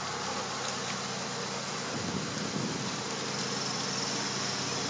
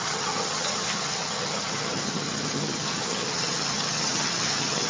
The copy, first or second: second